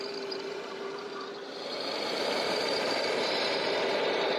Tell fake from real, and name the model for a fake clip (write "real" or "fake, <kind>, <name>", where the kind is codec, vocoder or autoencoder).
fake, vocoder, BigVGAN v2